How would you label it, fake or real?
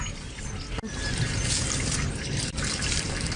real